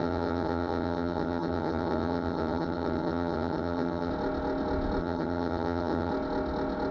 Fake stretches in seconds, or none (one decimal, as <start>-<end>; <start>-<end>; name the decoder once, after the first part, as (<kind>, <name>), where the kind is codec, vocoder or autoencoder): 0.0-4.1 (vocoder, HiFi-GAN); 5.0-6.1